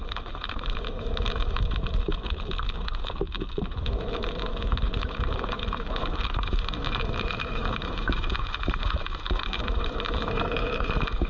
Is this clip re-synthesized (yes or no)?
yes